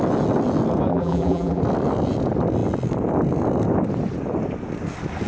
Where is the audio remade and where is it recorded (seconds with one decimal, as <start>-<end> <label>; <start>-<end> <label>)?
0.0-0.9 recorded; 0.9-1.6 remade; 1.6-5.3 recorded